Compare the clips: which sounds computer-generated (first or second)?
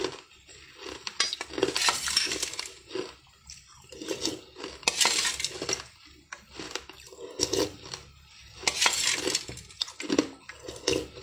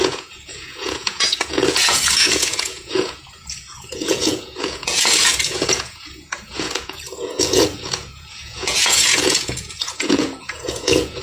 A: second